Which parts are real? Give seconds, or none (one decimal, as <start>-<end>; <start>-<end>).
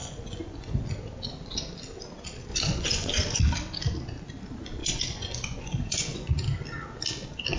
0.8-2.5; 3.4-4.8; 6.3-7.6